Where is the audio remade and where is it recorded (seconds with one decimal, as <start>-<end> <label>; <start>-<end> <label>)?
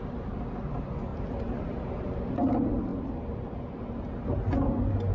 0.0-1.1 recorded; 1.1-1.9 remade; 1.9-2.9 recorded; 2.9-4.0 remade; 4.0-5.1 recorded